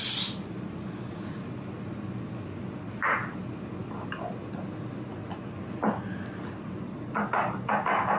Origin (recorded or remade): recorded